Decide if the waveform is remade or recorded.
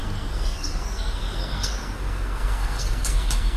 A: remade